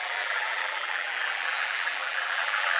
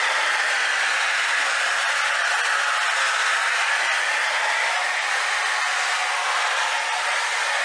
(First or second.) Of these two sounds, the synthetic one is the first